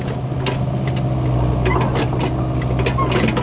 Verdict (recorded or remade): recorded